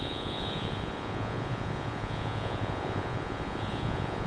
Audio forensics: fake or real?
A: fake